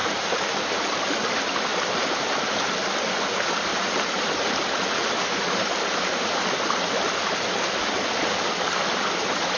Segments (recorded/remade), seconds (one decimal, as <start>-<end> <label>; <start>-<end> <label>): 0.0-0.6 remade; 0.6-3.7 recorded; 3.7-5.8 remade; 5.8-9.6 recorded